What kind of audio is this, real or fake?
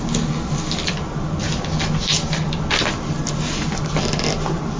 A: real